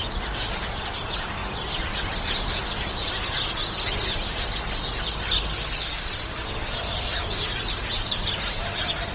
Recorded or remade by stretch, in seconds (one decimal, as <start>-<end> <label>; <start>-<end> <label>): 0.0-9.1 recorded